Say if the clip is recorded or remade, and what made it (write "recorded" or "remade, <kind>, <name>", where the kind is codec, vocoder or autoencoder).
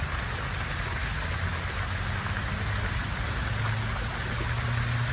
recorded